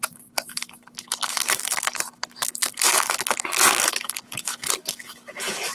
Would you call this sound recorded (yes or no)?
no